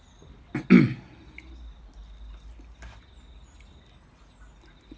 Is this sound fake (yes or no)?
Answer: no